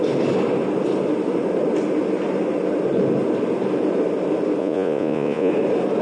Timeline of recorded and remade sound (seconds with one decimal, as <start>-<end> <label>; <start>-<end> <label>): 0.0-4.6 recorded; 4.6-5.5 remade; 5.5-6.0 recorded